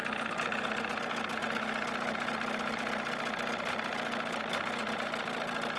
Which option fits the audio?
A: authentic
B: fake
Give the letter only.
A